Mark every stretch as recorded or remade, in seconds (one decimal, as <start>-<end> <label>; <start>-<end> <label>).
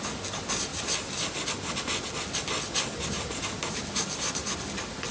0.0-5.1 recorded